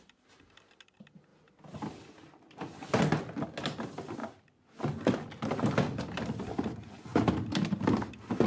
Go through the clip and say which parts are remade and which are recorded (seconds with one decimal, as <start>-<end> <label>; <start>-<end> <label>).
0.0-1.3 recorded; 1.3-3.0 remade; 3.0-7.1 recorded; 7.1-8.1 remade; 8.1-8.5 recorded